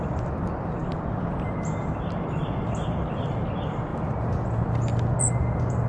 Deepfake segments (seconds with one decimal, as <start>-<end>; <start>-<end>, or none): none